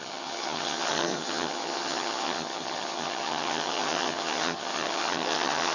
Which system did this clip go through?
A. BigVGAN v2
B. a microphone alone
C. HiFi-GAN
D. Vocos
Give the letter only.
C